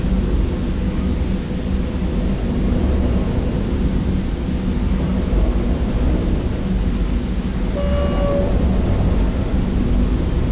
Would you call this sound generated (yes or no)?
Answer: no